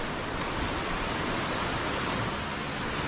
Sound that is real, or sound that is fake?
real